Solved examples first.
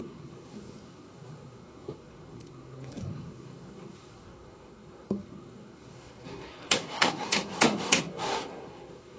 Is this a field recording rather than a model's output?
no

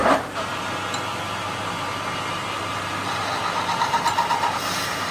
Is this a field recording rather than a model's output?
yes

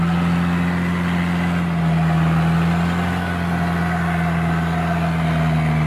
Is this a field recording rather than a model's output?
yes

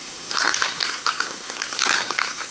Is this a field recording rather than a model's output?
no